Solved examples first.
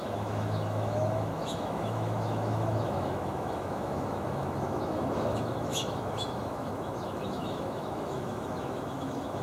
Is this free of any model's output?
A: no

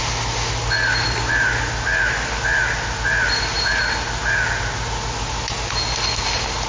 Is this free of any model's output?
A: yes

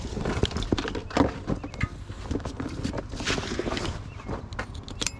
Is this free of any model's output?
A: yes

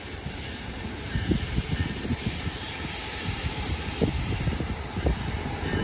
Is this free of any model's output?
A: no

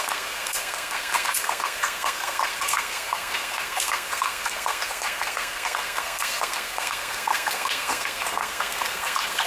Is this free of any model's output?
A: no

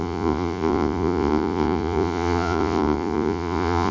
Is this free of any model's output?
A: no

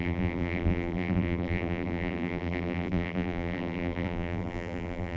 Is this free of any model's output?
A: no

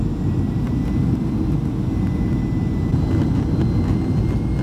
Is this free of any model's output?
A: yes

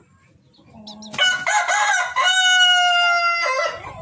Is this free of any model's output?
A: yes